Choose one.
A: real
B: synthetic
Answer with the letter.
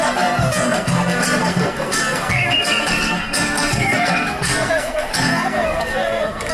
B